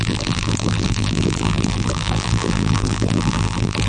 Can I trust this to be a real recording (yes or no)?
no